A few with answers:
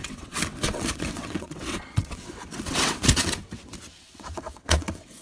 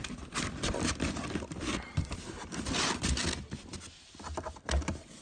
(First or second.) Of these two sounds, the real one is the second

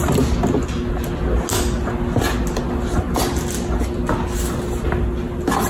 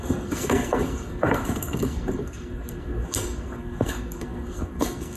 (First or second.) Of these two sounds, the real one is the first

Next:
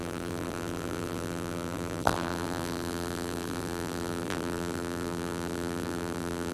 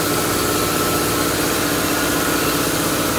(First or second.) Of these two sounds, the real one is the second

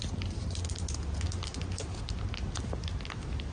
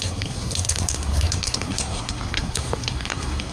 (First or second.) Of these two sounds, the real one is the first